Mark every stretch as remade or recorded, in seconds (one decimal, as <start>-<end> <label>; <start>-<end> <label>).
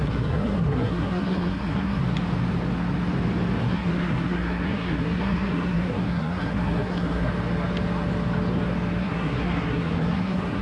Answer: 0.0-2.0 remade; 2.0-3.6 recorded; 3.6-7.3 remade; 7.3-9.0 recorded; 9.0-10.6 remade